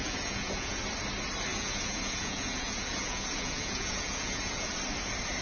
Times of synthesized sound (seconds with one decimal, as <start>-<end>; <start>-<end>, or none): 0.0-0.8; 1.5-4.7